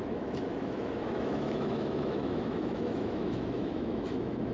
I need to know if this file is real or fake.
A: fake